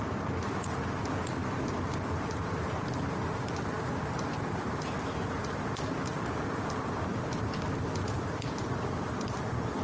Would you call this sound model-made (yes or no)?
no